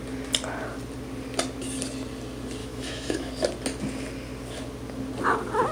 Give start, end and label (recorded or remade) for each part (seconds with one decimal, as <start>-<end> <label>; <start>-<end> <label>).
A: 0.0-2.6 recorded; 2.6-3.3 remade; 3.3-5.7 recorded